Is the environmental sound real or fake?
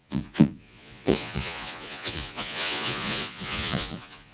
fake